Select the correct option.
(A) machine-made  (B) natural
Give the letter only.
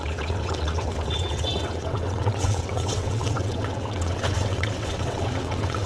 A